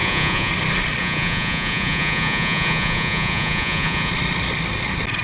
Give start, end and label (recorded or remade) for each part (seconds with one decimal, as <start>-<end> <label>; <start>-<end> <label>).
0.0-0.5 remade; 0.5-1.0 recorded; 1.0-4.1 remade; 4.1-5.2 recorded